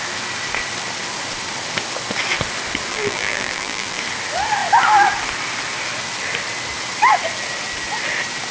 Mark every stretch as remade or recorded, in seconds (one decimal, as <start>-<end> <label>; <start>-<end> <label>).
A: 0.0-2.9 recorded; 2.9-4.0 remade; 4.0-8.5 recorded